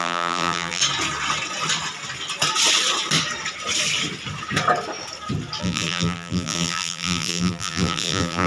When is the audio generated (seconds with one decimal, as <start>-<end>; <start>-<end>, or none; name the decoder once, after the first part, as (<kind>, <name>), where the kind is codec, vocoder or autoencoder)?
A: 0.0-0.8 (vocoder, BigVGAN v2); 5.6-8.5